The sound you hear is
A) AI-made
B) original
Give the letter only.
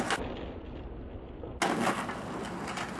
B